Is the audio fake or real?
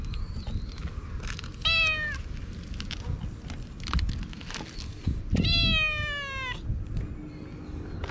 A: real